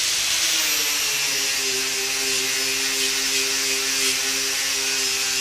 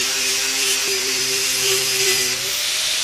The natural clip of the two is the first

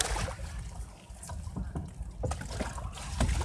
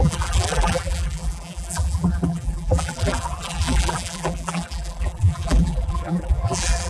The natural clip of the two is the first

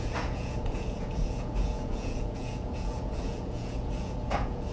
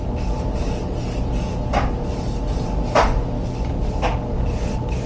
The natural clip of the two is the second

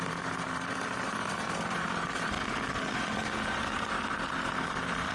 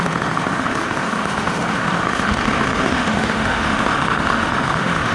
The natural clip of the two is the first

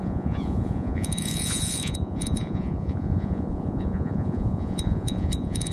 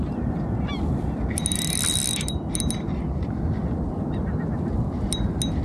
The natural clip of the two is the second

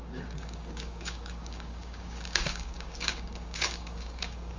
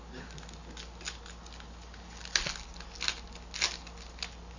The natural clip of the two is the second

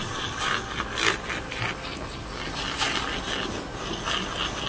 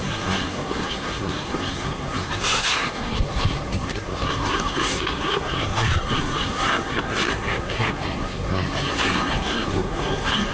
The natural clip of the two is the first